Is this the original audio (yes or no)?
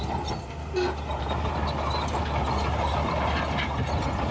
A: yes